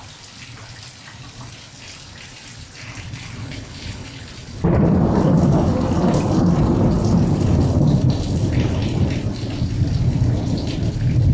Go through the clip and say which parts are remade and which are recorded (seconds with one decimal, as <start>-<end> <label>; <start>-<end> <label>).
0.0-3.4 recorded; 3.4-4.3 remade; 4.3-11.3 recorded